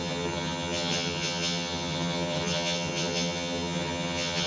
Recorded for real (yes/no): no